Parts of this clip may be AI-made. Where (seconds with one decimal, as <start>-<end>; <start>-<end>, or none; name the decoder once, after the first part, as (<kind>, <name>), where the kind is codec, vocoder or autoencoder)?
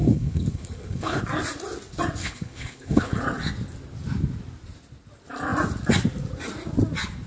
0.0-1.2 (codec, HILCodec); 2.2-3.2